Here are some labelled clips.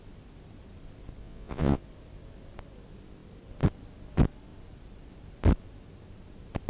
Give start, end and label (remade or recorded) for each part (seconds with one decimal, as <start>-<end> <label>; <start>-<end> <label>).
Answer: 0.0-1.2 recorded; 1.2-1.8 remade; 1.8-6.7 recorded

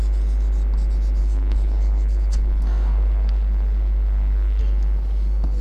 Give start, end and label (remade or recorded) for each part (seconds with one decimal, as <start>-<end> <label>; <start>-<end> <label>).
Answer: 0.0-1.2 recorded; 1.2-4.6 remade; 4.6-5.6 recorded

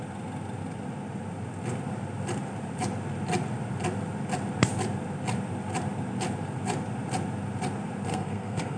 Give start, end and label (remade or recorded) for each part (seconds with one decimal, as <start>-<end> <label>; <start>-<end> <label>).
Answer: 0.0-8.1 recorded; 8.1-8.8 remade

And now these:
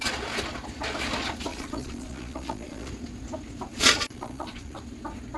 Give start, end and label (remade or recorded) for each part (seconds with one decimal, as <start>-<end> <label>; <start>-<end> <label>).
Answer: 0.0-1.5 recorded; 1.5-2.9 remade; 2.9-3.7 recorded; 3.7-4.8 remade; 4.8-5.4 recorded